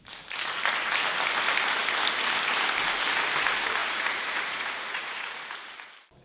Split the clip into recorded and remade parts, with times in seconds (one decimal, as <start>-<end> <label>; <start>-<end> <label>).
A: 0.0-3.8 recorded; 3.8-5.5 remade; 5.5-6.2 recorded